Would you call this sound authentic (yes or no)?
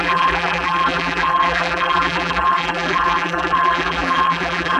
no